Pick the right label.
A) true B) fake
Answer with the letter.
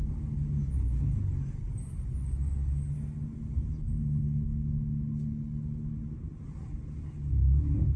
A